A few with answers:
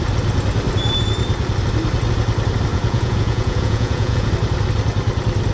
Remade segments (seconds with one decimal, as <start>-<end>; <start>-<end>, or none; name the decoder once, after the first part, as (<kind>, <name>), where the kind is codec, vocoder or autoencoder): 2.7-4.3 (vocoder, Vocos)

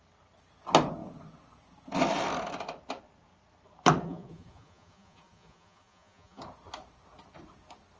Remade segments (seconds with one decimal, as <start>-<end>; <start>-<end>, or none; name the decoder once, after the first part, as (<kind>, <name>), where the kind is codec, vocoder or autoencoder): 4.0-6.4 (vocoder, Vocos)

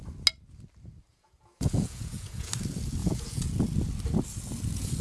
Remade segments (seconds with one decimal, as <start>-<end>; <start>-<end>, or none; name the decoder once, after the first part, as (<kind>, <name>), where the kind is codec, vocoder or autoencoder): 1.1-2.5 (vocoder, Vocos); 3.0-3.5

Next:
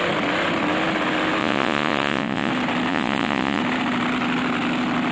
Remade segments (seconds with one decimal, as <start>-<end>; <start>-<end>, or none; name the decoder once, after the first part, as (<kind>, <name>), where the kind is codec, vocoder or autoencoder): 1.4-2.5 (vocoder, Vocos); 2.9-3.6

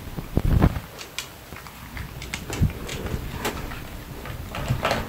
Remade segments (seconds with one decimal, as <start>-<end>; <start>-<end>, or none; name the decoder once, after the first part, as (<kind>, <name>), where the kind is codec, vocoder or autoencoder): none